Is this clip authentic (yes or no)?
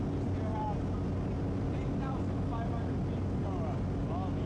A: yes